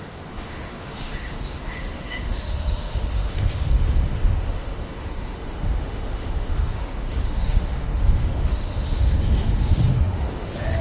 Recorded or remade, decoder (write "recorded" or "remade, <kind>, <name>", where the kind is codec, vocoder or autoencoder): remade, autoencoder, DAC-VAE